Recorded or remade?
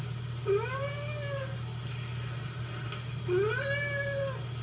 recorded